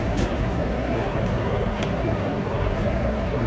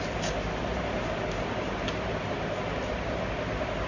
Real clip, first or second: second